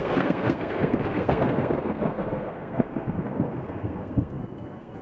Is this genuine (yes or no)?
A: no